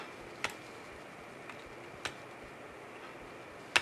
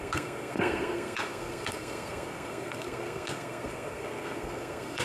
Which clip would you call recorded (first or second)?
first